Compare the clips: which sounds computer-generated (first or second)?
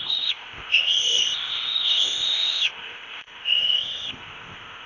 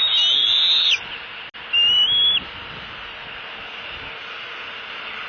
first